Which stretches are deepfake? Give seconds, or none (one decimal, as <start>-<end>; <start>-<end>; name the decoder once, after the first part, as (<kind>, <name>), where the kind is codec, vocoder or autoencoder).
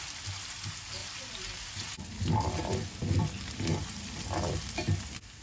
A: 1.0-4.2 (vocoder, BigVGAN v2)